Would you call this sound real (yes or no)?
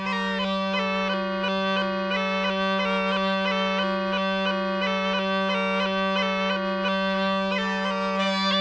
yes